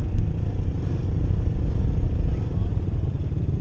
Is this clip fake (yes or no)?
no